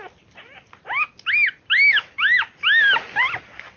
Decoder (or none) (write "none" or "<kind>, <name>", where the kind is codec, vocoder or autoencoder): none